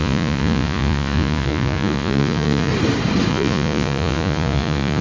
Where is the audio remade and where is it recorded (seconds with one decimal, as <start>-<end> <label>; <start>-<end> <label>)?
0.0-2.7 remade; 2.7-3.3 recorded; 3.3-5.0 remade